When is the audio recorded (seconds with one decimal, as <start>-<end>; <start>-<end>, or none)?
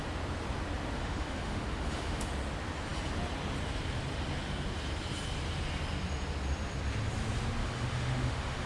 0.0-1.0; 2.3-7.6